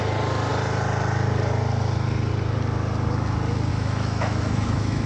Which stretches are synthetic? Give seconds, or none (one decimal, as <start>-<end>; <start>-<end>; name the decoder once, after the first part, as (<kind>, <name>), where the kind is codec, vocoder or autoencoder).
3.7-5.1 (autoencoder, DAC-VAE)